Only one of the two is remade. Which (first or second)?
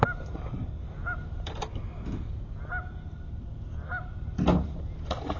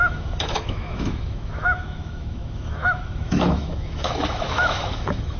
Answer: second